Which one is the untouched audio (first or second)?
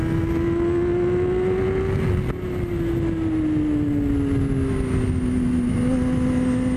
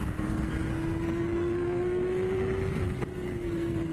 first